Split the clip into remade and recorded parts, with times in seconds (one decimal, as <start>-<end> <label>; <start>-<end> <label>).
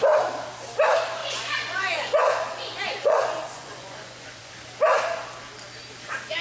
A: 0.0-1.2 recorded; 1.2-4.5 remade; 4.5-6.4 recorded